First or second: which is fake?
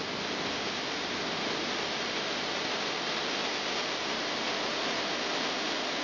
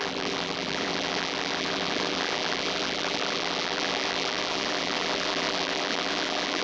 second